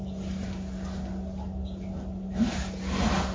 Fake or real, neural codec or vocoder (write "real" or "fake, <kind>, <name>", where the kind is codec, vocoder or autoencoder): real